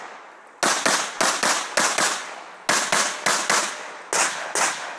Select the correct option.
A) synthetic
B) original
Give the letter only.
B